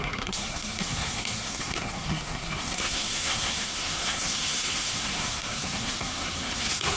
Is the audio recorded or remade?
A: remade